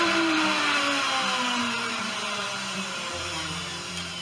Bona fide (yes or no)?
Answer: no